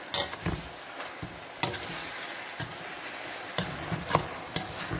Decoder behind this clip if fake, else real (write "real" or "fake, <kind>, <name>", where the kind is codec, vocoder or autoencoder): real